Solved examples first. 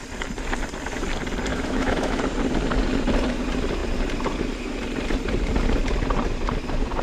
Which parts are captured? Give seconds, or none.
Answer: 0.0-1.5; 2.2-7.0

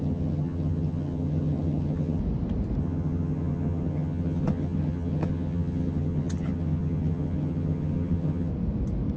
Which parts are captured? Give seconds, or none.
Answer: 2.2-2.8; 8.5-9.2